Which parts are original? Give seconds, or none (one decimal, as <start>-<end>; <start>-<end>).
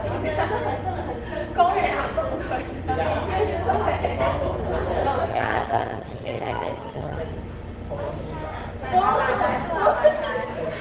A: 0.0-5.3; 7.2-10.8